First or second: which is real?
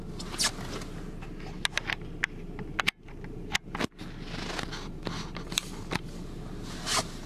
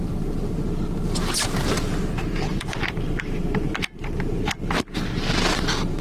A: first